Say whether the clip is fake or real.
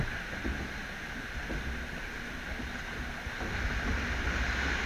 real